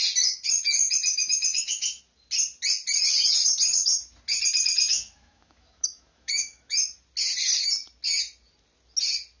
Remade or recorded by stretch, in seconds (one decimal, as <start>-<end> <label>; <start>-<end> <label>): 0.0-1.1 recorded; 1.1-2.0 remade; 2.0-4.9 recorded; 4.9-6.9 remade; 6.9-9.4 recorded